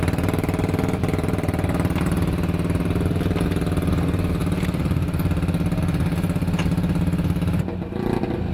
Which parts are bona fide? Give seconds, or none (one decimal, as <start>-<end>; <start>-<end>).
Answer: 0.0-8.5